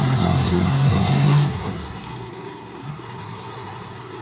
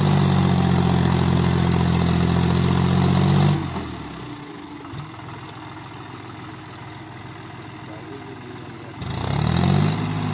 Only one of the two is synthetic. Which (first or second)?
first